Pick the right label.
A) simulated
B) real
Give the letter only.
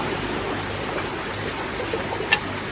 B